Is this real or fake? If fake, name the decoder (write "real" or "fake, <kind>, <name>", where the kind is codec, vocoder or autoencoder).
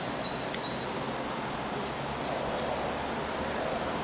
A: real